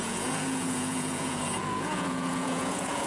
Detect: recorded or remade remade